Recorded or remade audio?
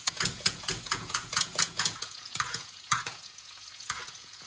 remade